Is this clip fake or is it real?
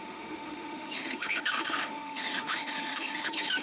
fake